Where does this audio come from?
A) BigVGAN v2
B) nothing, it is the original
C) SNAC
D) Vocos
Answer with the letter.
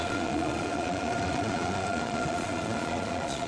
D